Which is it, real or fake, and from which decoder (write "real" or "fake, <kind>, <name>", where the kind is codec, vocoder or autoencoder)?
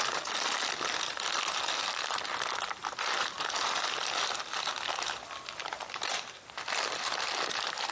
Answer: real